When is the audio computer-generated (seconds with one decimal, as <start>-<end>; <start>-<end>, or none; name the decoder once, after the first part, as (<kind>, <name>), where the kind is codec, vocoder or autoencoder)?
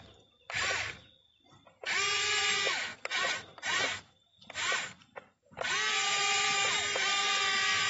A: 2.9-5.6 (vocoder, BigVGAN v2)